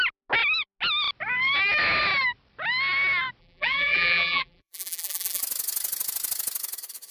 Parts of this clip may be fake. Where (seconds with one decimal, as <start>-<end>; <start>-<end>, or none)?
3.4-5.4